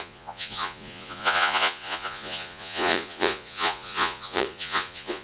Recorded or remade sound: remade